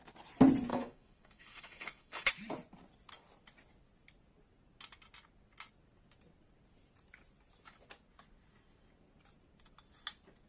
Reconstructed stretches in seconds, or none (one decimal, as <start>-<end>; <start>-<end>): 0.7-2.3